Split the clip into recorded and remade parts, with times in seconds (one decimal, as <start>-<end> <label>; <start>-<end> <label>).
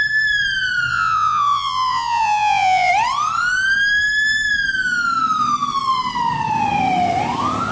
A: 0.0-0.9 recorded; 0.9-2.9 remade; 2.9-7.7 recorded